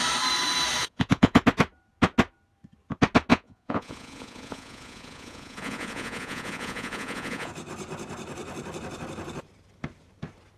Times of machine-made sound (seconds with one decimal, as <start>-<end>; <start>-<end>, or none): 0.8-1.4; 3.3-7.5